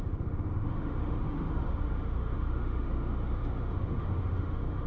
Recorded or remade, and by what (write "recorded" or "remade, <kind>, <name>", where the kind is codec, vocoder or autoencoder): remade, autoencoder, DAC-VAE